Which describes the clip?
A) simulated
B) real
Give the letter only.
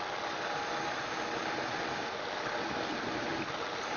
B